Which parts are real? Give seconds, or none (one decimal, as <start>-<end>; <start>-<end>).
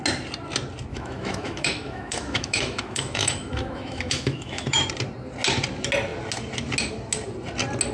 0.0-0.9; 4.9-7.9